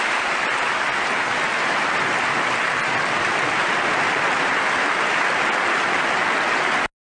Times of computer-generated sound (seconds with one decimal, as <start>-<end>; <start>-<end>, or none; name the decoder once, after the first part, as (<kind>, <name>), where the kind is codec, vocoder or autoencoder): none